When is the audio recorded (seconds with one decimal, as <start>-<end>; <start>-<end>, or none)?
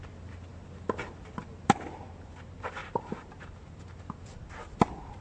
0.0-5.2